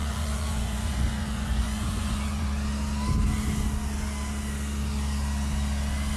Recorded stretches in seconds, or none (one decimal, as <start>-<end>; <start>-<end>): 2.5-6.2